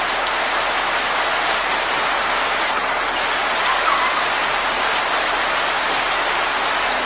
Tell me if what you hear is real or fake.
real